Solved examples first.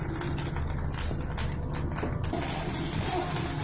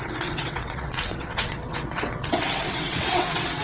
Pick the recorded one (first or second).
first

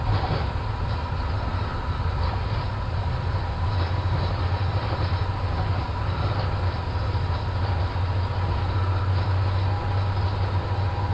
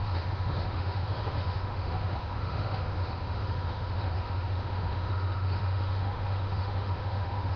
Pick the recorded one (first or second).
first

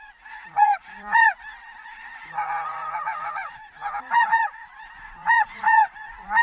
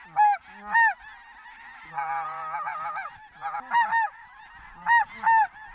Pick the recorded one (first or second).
second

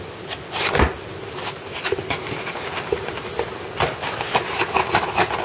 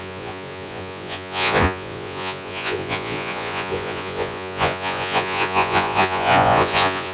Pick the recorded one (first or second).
first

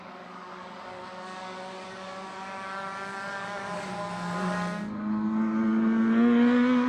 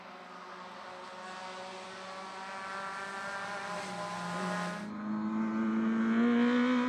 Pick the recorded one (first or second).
second